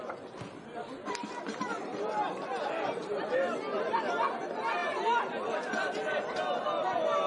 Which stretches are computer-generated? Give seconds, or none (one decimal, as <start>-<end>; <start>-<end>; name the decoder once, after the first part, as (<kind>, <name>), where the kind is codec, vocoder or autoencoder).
none